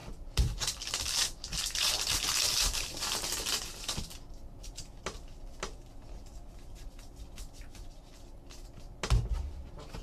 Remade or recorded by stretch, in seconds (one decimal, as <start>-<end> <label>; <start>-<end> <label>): 0.0-2.2 remade; 2.2-2.6 recorded; 2.6-4.0 remade; 4.0-10.0 recorded